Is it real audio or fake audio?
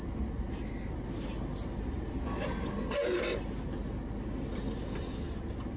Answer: real